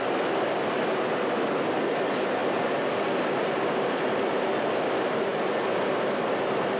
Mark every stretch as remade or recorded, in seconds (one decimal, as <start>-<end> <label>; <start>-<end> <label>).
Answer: 0.0-6.8 recorded

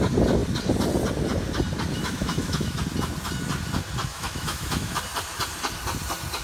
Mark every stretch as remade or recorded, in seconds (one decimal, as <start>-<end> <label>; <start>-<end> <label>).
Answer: 0.0-1.9 recorded; 1.9-2.8 remade; 2.8-4.1 recorded; 4.1-5.0 remade; 5.0-6.4 recorded

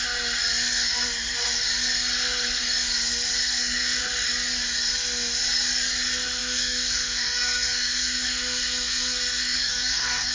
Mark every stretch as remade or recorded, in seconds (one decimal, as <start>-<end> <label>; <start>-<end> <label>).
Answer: 0.0-3.4 recorded; 3.4-4.0 remade; 4.0-6.4 recorded; 6.4-10.3 remade